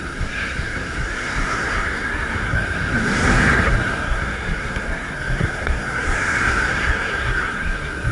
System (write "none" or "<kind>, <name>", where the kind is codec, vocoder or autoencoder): codec, SNAC